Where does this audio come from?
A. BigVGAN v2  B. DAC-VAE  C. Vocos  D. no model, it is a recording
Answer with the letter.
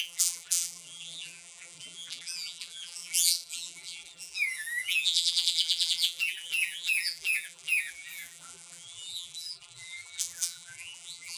A